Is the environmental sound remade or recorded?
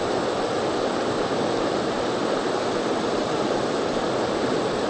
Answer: recorded